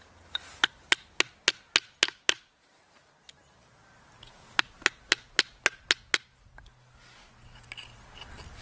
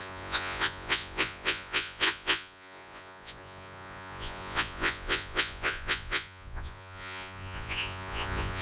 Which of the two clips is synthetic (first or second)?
second